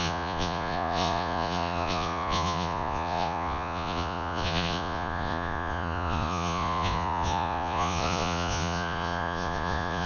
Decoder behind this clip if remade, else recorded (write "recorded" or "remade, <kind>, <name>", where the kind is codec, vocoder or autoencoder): remade, vocoder, Vocos